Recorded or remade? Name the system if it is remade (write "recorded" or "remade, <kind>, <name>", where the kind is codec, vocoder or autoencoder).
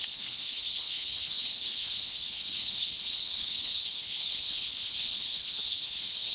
remade, codec, HILCodec